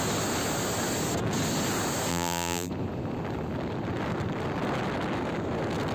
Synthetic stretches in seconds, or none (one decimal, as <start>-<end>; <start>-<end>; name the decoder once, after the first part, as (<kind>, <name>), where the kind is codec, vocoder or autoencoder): 2.1-2.7 (vocoder, BigVGAN v2)